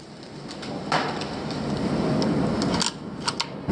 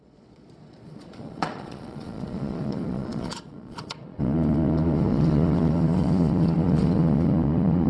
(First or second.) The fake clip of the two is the second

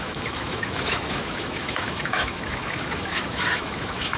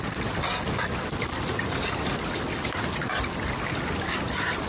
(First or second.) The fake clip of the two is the first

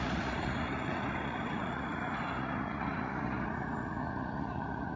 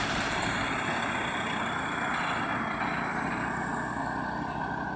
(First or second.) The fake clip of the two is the first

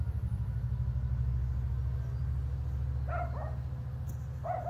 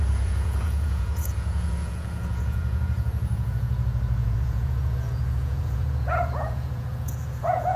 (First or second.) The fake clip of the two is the second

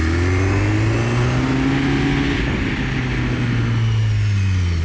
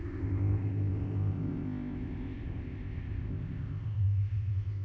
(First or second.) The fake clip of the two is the second